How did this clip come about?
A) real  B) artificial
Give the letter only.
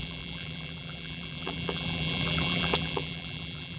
B